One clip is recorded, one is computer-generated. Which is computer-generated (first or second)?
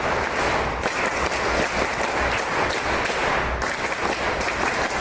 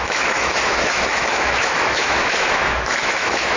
second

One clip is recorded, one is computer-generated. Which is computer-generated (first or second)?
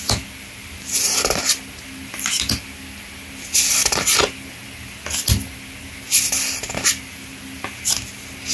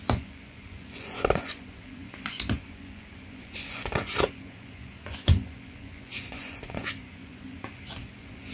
second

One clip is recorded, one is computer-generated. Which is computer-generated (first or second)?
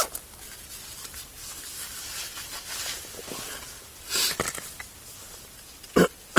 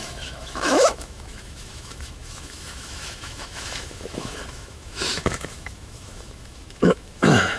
second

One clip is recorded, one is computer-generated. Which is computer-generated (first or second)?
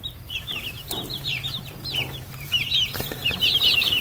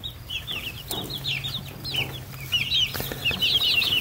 first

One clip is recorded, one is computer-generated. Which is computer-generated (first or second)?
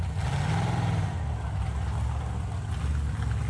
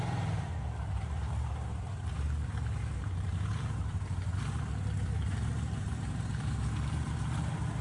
second